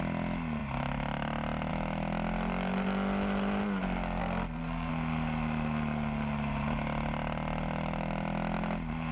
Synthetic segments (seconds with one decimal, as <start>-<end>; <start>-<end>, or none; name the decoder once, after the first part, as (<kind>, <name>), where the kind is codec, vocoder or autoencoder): 4.2-4.9 (codec, SNAC)